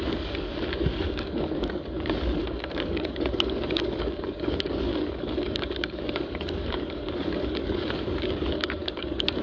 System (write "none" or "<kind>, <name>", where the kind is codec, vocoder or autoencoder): codec, DAC